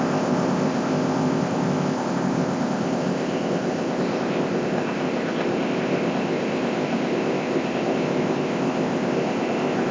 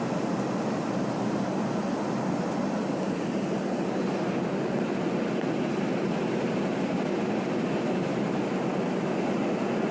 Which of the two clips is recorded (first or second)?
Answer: second